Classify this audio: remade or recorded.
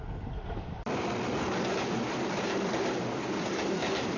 recorded